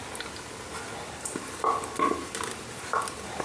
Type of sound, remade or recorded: recorded